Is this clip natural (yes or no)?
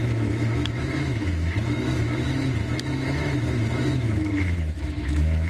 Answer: no